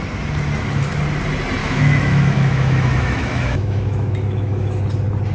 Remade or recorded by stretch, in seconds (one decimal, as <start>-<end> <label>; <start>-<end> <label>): 0.0-1.6 recorded; 1.6-4.8 remade; 4.8-5.3 recorded